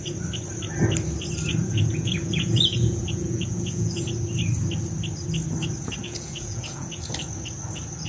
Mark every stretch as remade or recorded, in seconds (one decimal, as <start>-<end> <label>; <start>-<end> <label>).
0.0-1.6 recorded; 1.6-4.1 remade; 4.1-6.0 recorded; 6.0-7.1 remade; 7.1-8.1 recorded